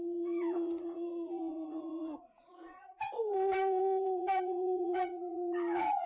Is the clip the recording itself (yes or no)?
no